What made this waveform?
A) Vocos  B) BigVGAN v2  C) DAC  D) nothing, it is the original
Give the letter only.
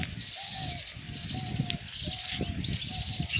D